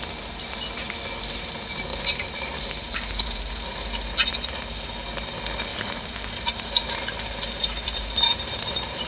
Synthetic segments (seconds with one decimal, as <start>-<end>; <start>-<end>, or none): 1.9-3.6; 5.7-9.1